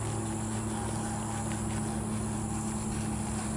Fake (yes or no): no